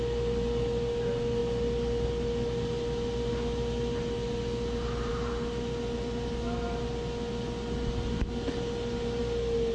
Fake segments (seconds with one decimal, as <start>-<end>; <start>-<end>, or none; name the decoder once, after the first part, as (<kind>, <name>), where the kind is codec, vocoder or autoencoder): none